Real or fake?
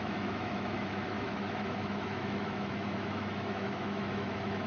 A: fake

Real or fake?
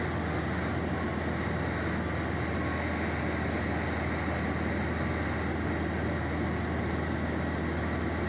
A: real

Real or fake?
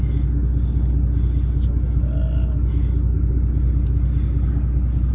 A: real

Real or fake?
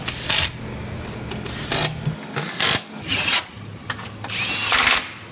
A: real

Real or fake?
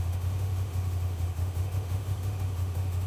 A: fake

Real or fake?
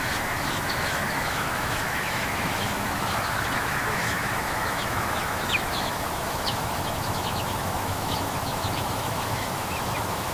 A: fake